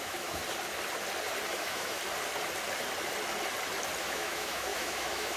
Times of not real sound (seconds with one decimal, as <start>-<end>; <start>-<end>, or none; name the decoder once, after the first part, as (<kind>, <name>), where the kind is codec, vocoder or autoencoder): 0.0-0.4 (autoencoder, DAC-VAE); 1.5-2.0; 4.0-5.4